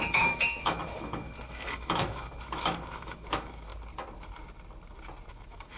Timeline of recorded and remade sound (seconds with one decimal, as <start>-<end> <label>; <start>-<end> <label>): 0.0-3.7 remade; 3.7-5.3 recorded; 5.3-5.8 remade